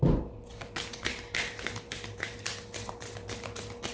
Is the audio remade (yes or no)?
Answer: no